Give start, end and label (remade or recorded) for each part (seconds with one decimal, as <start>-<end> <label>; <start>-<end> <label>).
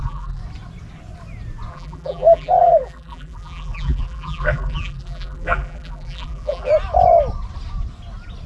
0.0-0.4 remade; 0.4-1.7 recorded; 1.7-6.7 remade; 6.7-8.5 recorded